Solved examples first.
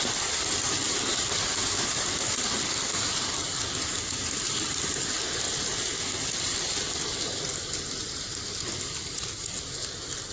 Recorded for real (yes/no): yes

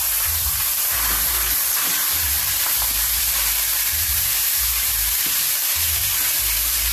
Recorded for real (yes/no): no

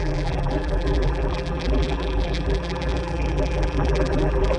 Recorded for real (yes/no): no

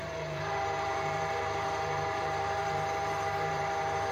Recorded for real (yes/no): no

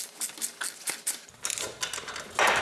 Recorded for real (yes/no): yes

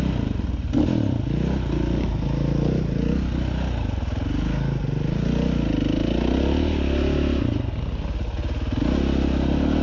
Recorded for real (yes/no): yes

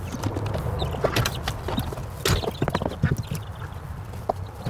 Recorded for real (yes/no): yes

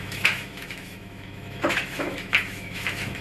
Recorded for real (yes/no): no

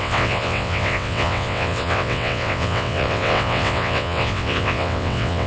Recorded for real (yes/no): no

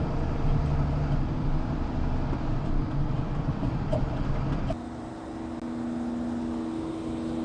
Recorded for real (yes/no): yes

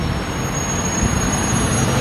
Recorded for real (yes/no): yes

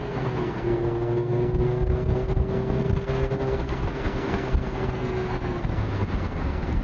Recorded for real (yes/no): no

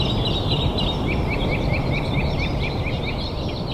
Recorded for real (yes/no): no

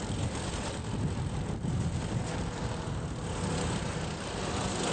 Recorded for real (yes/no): yes